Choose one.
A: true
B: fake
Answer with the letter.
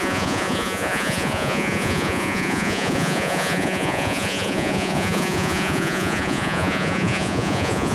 B